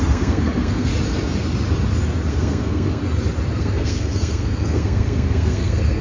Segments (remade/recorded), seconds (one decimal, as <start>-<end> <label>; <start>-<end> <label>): 0.0-0.9 remade; 0.9-2.3 recorded; 2.3-3.0 remade; 3.0-3.6 recorded; 3.6-6.0 remade